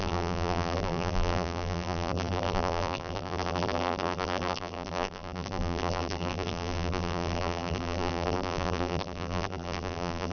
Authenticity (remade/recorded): remade